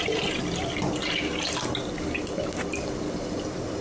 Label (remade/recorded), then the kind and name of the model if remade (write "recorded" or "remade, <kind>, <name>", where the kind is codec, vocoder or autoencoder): recorded